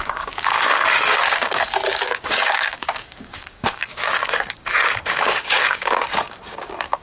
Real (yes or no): no